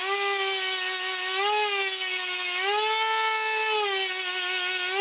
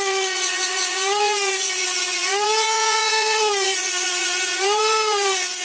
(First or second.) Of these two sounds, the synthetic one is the second